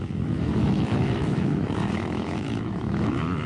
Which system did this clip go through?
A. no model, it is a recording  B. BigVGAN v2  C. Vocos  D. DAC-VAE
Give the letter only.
D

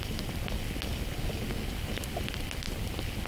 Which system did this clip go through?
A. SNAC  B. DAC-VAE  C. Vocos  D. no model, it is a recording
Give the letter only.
D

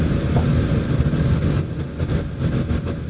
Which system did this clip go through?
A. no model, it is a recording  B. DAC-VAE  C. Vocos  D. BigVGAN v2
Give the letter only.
A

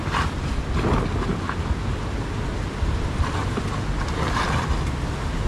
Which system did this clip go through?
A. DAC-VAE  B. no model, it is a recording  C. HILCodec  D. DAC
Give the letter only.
B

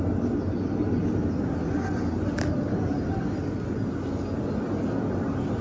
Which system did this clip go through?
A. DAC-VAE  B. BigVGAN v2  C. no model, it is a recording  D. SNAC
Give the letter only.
C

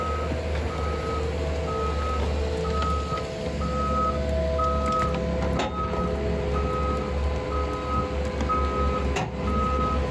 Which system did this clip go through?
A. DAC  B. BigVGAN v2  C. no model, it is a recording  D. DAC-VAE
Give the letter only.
C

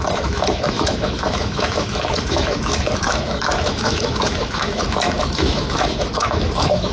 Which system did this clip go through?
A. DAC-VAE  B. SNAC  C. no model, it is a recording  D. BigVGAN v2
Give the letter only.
A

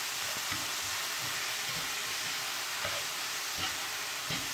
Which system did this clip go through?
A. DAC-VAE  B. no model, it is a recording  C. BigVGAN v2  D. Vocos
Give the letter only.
B